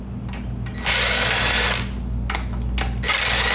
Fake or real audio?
real